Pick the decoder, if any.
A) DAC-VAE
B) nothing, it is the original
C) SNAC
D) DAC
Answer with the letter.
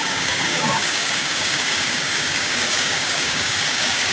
D